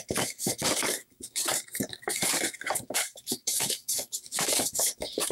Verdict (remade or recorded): remade